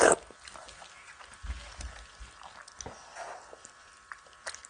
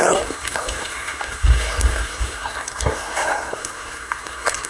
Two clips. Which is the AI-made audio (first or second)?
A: second